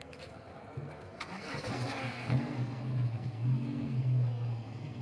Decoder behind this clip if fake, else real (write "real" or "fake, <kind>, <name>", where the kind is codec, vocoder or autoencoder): fake, codec, SNAC